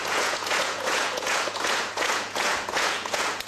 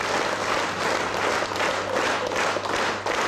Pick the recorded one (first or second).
second